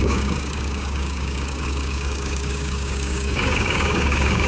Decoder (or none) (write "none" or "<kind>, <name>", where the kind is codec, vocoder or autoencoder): codec, DAC